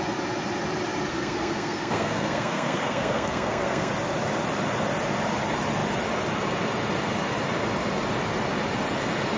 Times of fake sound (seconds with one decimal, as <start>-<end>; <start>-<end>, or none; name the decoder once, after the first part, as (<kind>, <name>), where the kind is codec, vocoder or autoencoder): 1.1-3.9 (codec, SNAC)